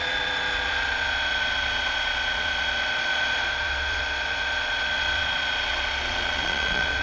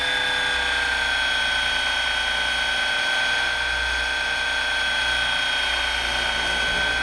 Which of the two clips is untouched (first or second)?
second